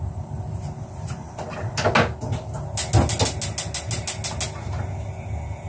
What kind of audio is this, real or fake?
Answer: real